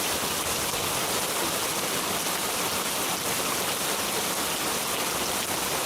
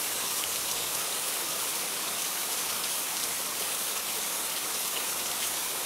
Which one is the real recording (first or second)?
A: first